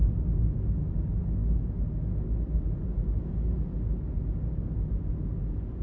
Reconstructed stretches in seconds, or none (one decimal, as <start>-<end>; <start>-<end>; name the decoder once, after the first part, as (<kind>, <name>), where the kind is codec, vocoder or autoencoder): none

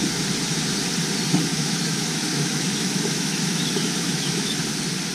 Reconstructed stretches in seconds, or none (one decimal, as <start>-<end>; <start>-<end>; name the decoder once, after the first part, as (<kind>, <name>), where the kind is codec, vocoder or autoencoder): 1.5-4.6 (autoencoder, DAC-VAE)

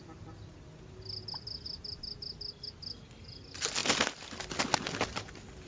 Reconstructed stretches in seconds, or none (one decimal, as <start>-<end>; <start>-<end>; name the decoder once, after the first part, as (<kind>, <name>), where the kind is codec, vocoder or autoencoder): none

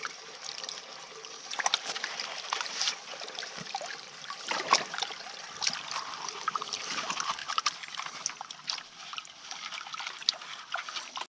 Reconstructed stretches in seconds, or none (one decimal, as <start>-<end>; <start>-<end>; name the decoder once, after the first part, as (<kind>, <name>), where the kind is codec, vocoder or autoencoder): none